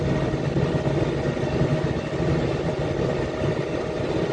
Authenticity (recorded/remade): recorded